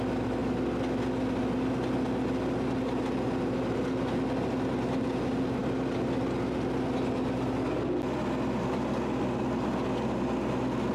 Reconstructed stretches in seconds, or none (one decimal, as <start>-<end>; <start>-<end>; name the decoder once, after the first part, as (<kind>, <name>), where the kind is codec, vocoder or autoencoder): none